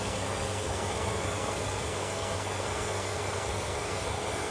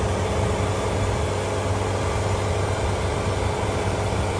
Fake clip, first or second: first